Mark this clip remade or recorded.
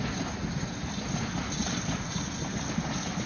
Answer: recorded